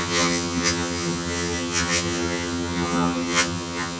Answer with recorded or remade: remade